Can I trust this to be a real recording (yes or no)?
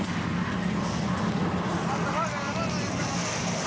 yes